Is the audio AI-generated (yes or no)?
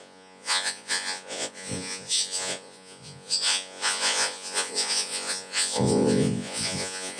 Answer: yes